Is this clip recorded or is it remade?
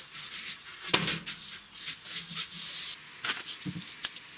recorded